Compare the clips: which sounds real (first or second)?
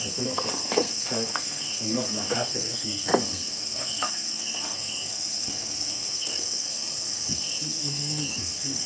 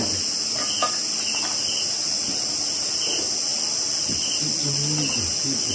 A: second